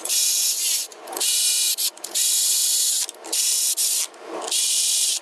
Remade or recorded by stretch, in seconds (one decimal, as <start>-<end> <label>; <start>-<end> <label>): 0.0-2.6 remade; 2.6-5.2 recorded